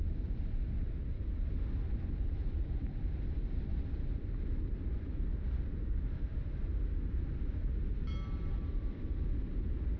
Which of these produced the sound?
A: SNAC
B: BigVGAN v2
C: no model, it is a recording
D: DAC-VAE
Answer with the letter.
C